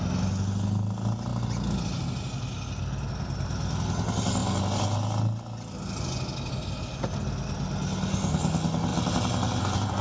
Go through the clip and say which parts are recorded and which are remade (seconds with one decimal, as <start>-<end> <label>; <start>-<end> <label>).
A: 0.0-8.9 recorded; 8.9-9.6 remade; 9.6-10.0 recorded